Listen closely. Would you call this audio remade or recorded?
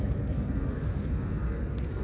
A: remade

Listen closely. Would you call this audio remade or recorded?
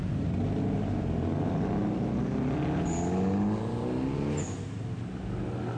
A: recorded